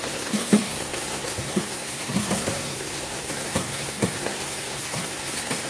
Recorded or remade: remade